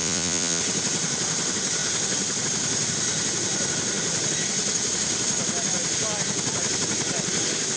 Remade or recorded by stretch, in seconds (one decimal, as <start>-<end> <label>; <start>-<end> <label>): 0.0-0.6 remade; 0.6-7.8 recorded